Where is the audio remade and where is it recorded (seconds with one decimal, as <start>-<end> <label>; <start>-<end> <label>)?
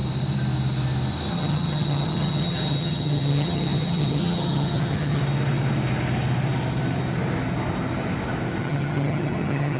0.0-1.3 recorded; 1.3-5.2 remade; 5.2-8.6 recorded; 8.6-9.8 remade